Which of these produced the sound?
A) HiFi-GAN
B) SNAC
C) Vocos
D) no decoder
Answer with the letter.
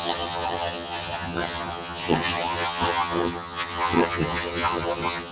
A